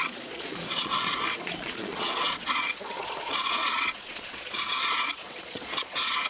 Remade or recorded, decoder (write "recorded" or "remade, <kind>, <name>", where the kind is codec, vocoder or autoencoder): remade, vocoder, Vocos